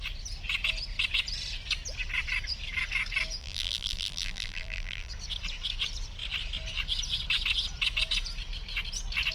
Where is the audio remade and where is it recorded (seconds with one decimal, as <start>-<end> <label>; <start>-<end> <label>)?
0.0-3.4 recorded; 3.4-5.1 remade; 5.1-9.3 recorded